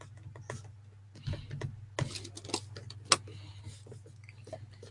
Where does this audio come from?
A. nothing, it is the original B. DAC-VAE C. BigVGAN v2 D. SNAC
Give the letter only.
A